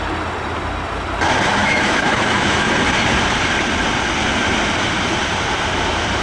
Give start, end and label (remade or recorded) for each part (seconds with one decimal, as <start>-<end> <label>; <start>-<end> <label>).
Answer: 0.0-1.6 recorded; 1.6-2.7 remade; 2.7-6.2 recorded